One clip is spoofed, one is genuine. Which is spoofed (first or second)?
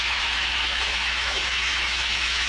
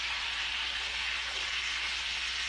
first